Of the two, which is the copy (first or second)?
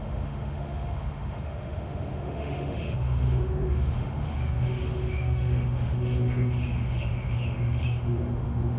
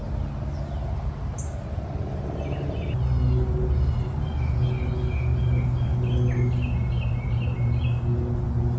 first